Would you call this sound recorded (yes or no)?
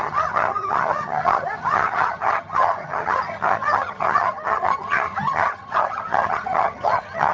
no